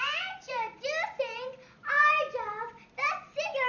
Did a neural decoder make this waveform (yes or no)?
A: no